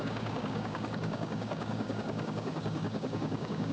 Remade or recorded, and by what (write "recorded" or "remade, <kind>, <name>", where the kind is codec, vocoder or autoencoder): remade, codec, DAC